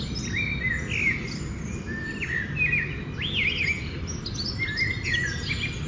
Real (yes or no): yes